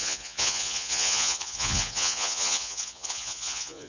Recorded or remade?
remade